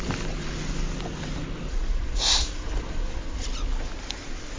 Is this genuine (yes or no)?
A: yes